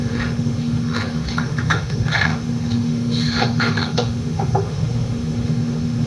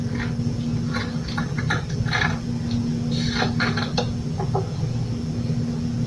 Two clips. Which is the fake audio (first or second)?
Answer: first